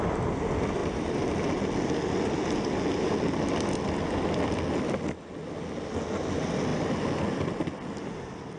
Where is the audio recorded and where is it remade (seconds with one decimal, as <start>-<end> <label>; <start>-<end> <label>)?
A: 0.0-8.6 recorded